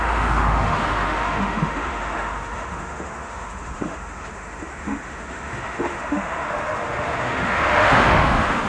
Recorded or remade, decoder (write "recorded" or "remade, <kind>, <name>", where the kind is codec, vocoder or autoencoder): remade, autoencoder, DAC-VAE